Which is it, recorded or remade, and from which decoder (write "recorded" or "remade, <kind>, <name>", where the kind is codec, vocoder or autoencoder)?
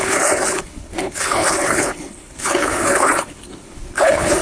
remade, codec, HILCodec